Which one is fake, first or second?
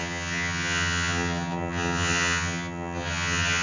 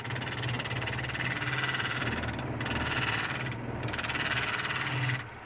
first